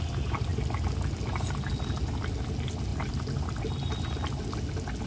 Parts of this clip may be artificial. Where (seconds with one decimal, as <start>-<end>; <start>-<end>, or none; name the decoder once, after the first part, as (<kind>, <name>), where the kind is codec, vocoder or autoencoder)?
none